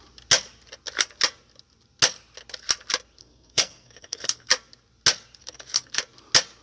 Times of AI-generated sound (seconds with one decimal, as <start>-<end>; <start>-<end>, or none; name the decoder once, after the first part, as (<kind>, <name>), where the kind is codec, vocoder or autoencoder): 3.2-4.5 (codec, SNAC); 5.4-6.0